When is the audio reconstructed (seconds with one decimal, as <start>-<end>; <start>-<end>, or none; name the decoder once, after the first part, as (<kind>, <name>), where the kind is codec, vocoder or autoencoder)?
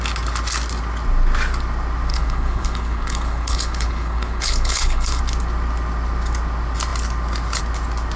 2.1-5.2 (codec, HILCodec)